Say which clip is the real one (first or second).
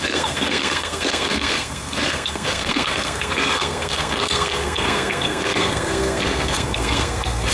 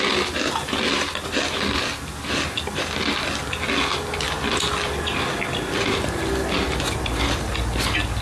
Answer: second